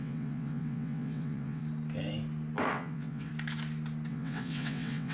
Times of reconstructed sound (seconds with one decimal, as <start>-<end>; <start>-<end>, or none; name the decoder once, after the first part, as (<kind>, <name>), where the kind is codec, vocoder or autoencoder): 0.0-1.6 (vocoder, WaveNeXt); 2.7-3.3; 4.1-5.1